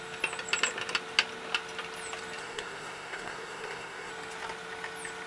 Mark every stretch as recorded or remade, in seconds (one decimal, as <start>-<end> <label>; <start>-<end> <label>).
0.0-2.4 recorded; 2.4-4.1 remade; 4.1-5.3 recorded